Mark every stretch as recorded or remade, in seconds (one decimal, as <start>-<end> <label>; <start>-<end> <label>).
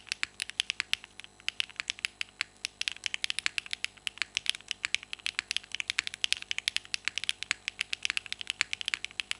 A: 0.0-9.4 recorded